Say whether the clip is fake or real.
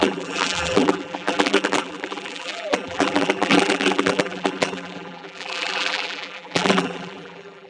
fake